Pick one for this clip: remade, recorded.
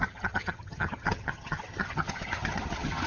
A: remade